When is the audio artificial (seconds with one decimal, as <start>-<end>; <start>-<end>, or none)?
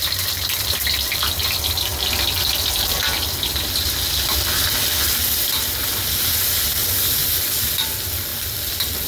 none